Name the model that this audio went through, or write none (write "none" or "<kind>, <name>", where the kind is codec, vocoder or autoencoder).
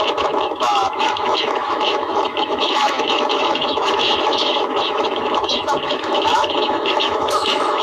autoencoder, DAC-VAE